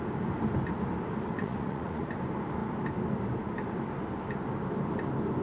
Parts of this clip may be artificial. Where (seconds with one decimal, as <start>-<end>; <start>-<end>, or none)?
1.4-2.1